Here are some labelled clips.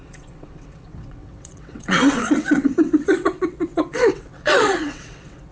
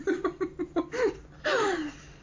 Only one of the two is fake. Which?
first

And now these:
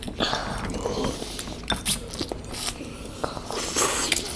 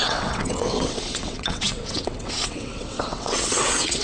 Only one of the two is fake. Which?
second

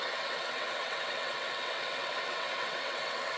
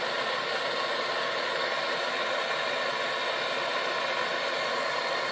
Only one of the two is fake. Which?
first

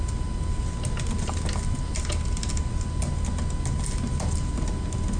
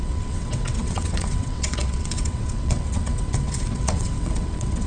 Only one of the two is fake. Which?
second